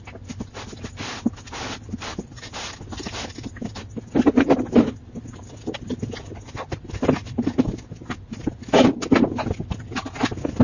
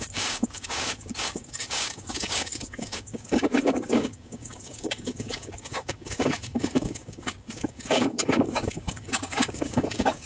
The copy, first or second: second